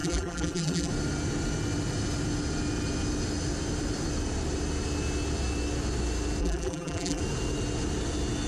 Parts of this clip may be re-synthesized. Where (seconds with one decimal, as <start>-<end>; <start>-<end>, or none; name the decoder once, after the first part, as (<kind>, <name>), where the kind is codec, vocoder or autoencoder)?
0.0-0.9 (vocoder, BigVGAN v2); 6.4-7.2